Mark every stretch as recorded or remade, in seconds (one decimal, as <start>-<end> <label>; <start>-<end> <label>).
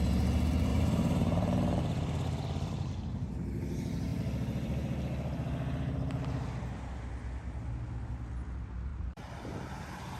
0.0-0.7 recorded; 0.7-1.8 remade; 1.8-8.9 recorded; 8.9-9.7 remade; 9.7-10.2 recorded